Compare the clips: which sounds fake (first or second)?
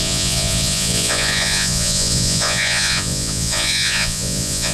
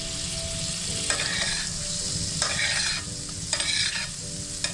first